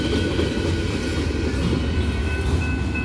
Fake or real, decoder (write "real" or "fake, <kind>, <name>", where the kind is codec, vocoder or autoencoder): real